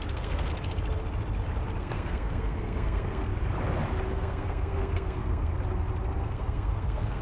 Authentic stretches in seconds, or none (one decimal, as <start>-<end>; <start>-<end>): 0.5-1.8; 3.3-4.1; 5.5-6.2